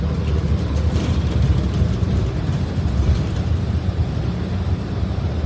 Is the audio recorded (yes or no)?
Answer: no